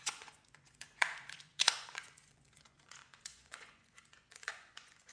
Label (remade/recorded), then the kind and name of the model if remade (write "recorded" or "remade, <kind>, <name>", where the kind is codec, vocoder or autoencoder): remade, vocoder, Vocos